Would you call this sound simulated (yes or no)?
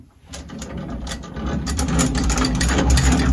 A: yes